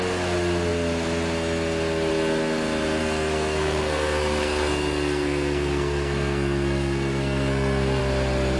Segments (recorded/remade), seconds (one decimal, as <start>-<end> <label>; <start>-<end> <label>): 0.0-3.0 recorded; 3.0-8.0 remade; 8.0-8.6 recorded